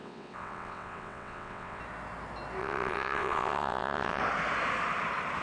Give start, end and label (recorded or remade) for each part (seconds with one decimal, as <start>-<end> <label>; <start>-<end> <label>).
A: 0.0-1.8 remade; 1.8-2.6 recorded; 2.6-4.2 remade; 4.2-5.4 recorded